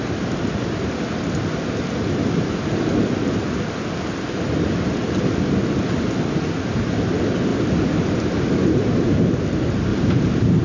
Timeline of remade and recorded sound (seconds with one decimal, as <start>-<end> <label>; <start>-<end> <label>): 0.0-7.5 recorded; 7.5-8.7 remade; 8.7-9.9 recorded; 9.9-10.6 remade